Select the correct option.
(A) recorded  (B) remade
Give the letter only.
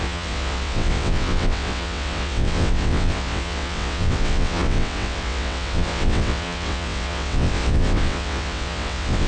B